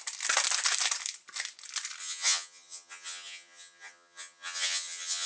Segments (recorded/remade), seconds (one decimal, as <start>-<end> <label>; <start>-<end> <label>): 0.0-2.0 recorded; 2.0-5.3 remade